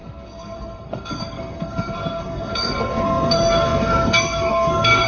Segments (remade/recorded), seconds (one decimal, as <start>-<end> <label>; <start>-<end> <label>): 0.0-5.1 remade